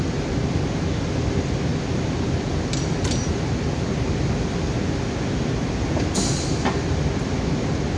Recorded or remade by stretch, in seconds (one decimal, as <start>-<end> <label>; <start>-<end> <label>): 0.0-8.0 recorded